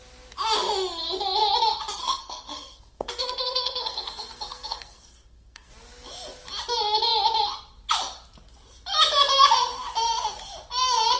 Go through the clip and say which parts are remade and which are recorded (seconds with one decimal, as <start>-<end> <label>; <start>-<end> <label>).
0.0-2.0 recorded; 2.0-5.7 remade; 5.7-11.2 recorded